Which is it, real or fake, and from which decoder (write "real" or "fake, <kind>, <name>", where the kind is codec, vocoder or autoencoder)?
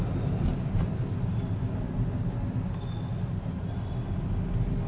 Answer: real